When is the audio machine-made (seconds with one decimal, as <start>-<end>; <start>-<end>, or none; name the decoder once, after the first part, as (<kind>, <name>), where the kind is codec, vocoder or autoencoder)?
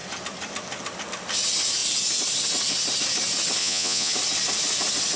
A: 3.6-4.1 (vocoder, Vocos)